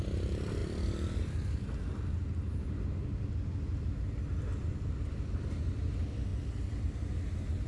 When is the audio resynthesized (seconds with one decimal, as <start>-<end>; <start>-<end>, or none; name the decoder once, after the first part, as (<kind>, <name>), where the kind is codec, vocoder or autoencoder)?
none